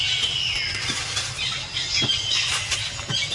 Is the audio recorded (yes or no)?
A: yes